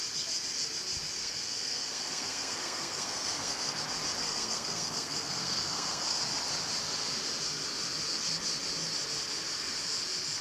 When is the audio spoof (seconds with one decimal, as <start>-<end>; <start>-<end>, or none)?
1.2-3.8; 4.2-6.2